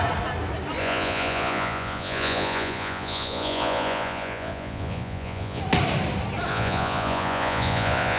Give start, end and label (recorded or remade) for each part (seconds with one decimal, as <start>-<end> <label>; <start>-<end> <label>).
0.0-0.8 recorded; 0.8-5.6 remade; 5.6-6.5 recorded; 6.5-8.2 remade